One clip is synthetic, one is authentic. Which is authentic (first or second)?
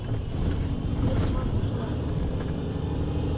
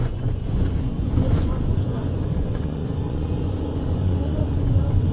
first